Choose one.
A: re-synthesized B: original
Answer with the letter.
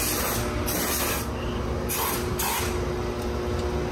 B